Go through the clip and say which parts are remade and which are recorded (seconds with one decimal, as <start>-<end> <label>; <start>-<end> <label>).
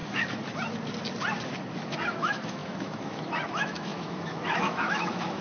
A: 0.0-1.9 recorded; 1.9-5.4 remade